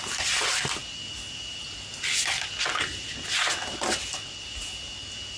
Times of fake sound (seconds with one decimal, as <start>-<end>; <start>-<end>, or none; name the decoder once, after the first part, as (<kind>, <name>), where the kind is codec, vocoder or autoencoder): none